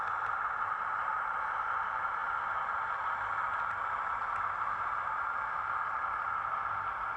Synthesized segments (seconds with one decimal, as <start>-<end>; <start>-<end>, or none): none